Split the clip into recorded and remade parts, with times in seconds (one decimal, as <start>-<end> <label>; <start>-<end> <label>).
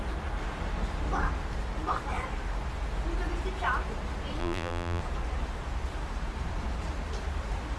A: 0.0-4.4 recorded; 4.4-5.0 remade; 5.0-7.8 recorded